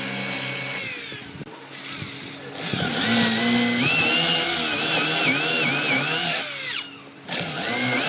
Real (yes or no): yes